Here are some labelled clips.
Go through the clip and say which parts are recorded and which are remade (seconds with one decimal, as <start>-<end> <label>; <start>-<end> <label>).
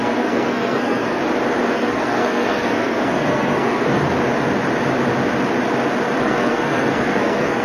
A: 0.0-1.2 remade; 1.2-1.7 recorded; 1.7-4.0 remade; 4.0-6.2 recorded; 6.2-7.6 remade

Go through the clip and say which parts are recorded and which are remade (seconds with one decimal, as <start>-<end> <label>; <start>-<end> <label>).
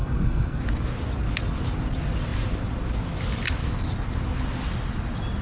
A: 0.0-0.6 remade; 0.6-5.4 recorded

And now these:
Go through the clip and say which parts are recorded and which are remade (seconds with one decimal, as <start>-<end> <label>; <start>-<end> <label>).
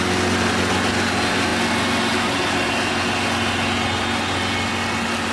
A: 0.0-5.3 recorded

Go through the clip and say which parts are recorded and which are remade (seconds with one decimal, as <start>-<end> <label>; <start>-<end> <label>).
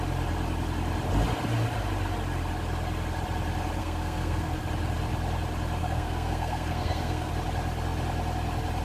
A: 0.0-3.8 recorded; 3.8-4.6 remade; 4.6-5.8 recorded; 5.8-7.3 remade; 7.3-8.8 recorded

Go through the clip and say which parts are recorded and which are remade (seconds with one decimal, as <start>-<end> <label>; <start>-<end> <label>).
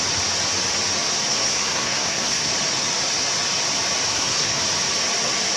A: 0.0-1.3 recorded; 1.3-2.5 remade; 2.5-4.1 recorded; 4.1-4.6 remade; 4.6-5.6 recorded